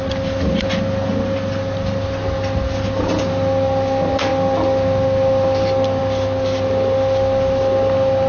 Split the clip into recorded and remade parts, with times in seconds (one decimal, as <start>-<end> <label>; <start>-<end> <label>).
0.0-8.3 recorded